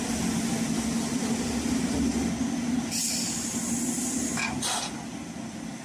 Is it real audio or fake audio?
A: real